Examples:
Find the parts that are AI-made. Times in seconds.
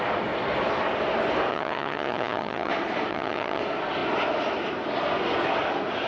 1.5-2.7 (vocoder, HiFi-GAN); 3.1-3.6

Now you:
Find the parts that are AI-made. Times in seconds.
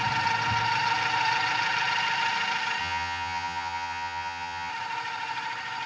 2.8-4.7 (vocoder, HiFi-GAN)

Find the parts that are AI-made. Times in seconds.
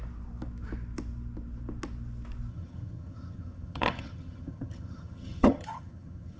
2.5-6.4 (vocoder, HiFi-GAN)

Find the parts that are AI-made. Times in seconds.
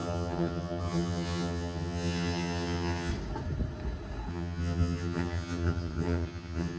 0.0-3.1 (vocoder, HiFi-GAN); 4.3-6.8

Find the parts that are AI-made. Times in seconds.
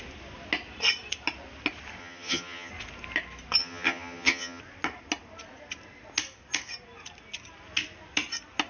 2.0-2.7 (vocoder, HiFi-GAN); 3.6-4.6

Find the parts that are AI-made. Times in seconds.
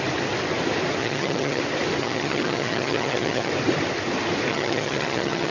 1.0-1.6 (vocoder, HiFi-GAN); 2.0-3.5; 4.5-5.5